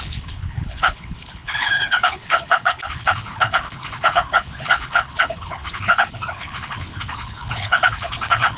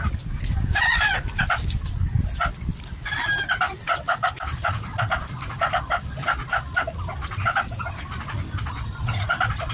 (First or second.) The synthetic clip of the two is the first